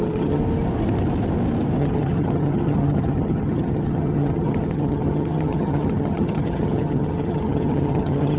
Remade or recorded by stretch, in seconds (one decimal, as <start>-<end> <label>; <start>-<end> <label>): 0.0-0.4 remade; 0.4-1.8 recorded; 1.8-8.4 remade